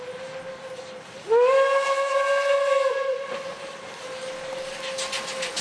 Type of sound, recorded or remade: recorded